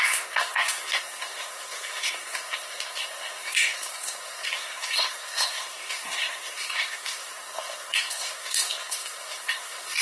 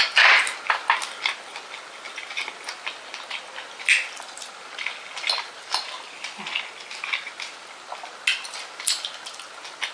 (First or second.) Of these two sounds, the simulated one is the first